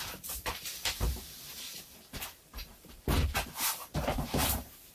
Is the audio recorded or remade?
remade